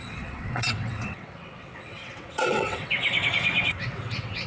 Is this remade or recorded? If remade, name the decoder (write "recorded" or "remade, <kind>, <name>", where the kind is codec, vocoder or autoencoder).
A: remade, vocoder, WaveNeXt